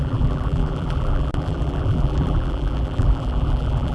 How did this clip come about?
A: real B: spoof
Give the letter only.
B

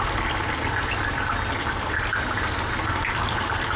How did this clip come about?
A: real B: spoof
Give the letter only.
A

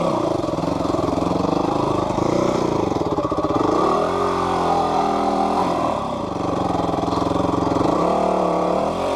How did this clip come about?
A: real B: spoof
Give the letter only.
B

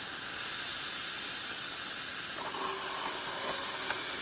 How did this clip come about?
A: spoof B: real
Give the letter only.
B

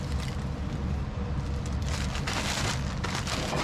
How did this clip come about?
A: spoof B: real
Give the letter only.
B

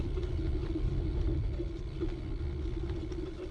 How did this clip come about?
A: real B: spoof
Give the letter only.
A